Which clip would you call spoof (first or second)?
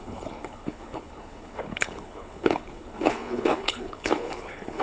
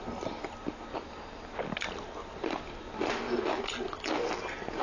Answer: first